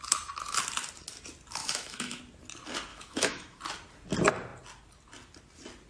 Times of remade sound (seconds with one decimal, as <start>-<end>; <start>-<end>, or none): 1.6-2.2; 2.9-3.6

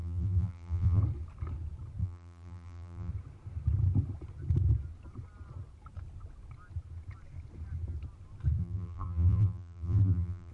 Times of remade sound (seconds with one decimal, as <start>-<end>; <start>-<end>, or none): 0.0-1.0; 2.0-3.1; 8.6-10.5

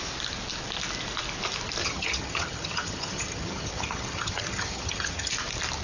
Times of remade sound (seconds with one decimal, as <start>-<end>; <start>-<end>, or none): 1.8-5.3

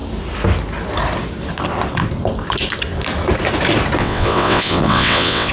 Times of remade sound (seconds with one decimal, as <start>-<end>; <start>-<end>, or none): 4.0-5.5